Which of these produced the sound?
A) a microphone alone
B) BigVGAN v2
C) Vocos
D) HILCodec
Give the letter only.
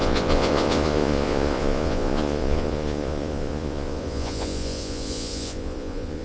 C